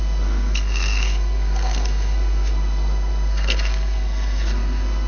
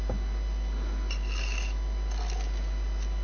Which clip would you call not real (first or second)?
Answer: first